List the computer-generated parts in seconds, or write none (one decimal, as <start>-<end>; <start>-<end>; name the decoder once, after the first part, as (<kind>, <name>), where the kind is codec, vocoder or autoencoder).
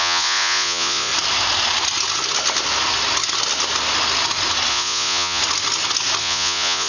0.0-1.1 (vocoder, Vocos); 4.7-5.4; 6.2-6.9